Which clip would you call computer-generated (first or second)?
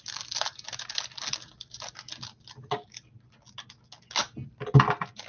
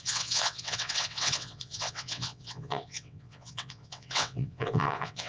second